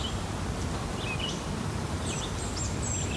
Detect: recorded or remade recorded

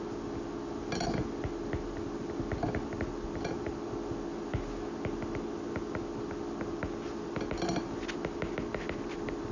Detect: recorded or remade recorded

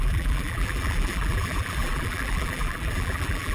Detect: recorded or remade remade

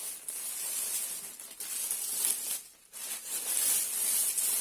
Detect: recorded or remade recorded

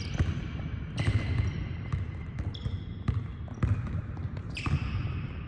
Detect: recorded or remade remade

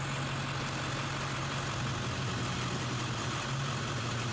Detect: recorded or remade recorded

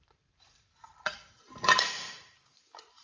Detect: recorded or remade remade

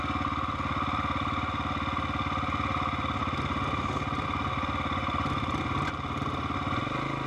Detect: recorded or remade recorded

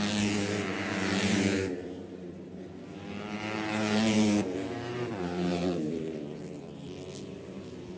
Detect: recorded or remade remade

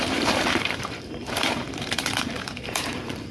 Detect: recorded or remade remade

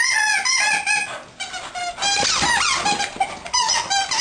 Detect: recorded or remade recorded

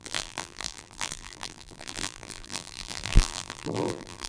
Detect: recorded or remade remade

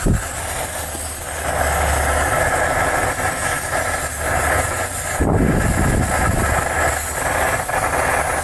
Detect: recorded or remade recorded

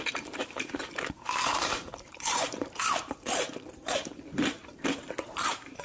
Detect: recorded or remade remade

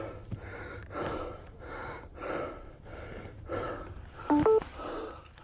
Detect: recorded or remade remade